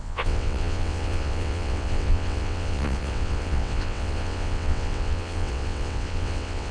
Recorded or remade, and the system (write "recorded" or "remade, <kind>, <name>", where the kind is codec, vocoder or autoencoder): remade, vocoder, WaveNeXt